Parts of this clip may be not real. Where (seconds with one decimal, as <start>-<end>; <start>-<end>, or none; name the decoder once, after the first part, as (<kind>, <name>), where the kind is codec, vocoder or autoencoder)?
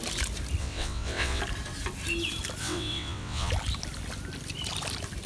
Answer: 0.6-1.4 (vocoder, WaveNeXt); 2.6-3.5